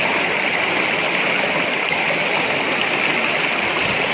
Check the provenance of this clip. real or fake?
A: real